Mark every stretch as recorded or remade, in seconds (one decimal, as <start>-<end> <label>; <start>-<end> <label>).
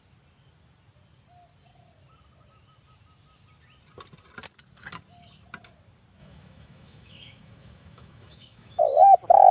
0.0-6.2 recorded; 6.2-8.8 remade; 8.8-9.5 recorded